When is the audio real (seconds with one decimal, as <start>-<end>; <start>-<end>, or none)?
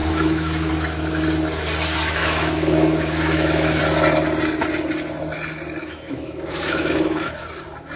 0.7-2.2; 3.8-5.8; 7.4-8.0